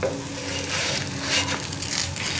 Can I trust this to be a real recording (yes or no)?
yes